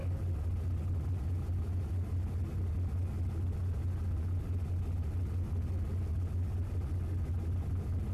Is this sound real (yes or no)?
yes